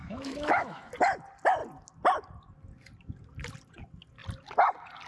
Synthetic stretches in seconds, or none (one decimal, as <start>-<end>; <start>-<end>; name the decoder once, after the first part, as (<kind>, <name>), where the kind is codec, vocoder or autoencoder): 0.0-0.9 (autoencoder, DAC-VAE)